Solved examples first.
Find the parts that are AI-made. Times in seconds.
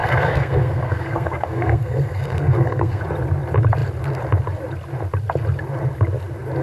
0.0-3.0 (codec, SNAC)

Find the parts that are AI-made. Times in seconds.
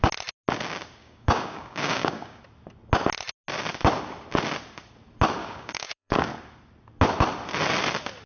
1.0-2.4 (codec, DAC); 5.4-6.3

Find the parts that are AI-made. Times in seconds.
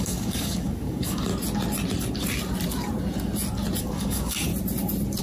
0.0-1.3 (codec, DAC); 3.8-4.5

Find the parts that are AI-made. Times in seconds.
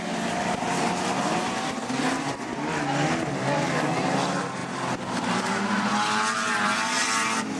none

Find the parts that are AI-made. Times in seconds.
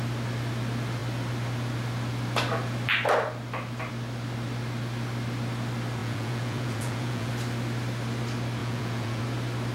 6.0-7.3 (vocoder, Vocos); 8.6-9.2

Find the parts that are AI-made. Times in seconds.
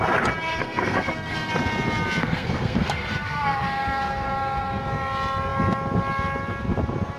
0.5-1.5 (codec, SNAC); 2.2-4.8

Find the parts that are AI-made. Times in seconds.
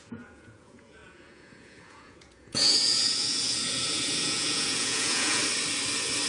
0.0-5.4 (vocoder, Vocos)